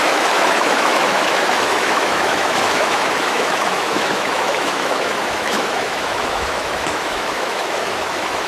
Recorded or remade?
remade